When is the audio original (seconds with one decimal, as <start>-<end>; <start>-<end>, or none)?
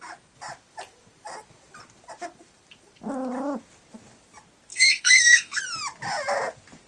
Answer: 0.0-4.7; 5.6-6.9